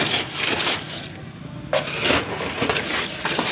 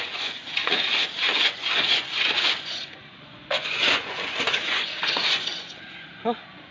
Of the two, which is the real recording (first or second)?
first